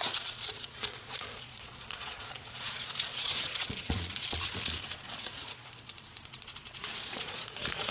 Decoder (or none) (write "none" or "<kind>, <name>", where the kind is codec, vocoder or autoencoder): vocoder, Vocos